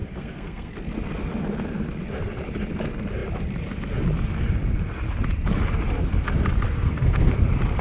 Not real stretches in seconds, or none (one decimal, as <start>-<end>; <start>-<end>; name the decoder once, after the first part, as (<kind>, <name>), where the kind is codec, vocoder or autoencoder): 0.0-0.7 (codec, SNAC); 6.7-7.3